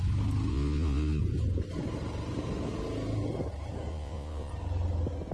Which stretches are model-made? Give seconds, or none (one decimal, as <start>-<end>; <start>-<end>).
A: 0.5-1.2; 3.9-4.5